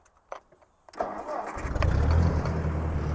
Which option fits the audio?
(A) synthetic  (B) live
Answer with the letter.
B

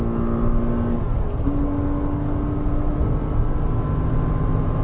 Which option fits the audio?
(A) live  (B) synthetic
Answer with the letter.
A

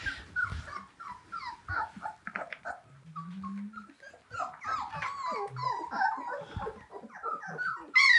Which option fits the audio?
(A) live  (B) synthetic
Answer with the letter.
A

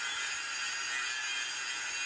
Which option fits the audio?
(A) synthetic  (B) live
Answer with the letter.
B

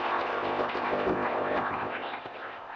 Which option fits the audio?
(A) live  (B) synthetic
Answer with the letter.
B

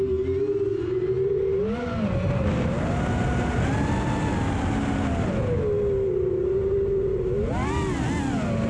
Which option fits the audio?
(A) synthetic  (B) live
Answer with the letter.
B